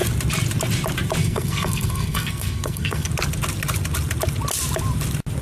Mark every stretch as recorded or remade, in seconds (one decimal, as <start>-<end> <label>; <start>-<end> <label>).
0.0-1.2 recorded; 1.2-3.1 remade; 3.1-5.4 recorded